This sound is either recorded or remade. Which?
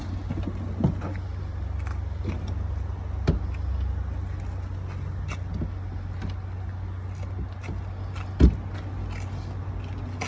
recorded